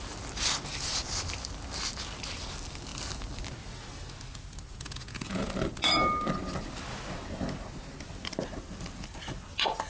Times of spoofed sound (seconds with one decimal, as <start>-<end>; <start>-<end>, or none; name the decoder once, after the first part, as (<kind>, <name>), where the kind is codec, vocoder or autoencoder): 4.7-5.5 (vocoder, Vocos)